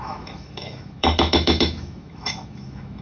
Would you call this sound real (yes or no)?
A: no